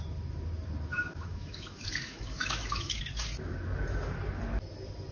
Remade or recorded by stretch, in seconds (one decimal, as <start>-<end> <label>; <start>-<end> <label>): 0.0-0.9 recorded; 0.9-3.0 remade; 3.0-5.1 recorded